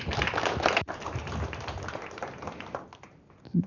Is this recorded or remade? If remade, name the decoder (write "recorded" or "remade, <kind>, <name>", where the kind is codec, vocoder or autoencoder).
recorded